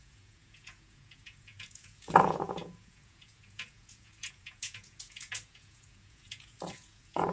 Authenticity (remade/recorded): remade